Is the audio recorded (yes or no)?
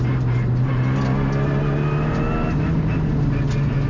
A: yes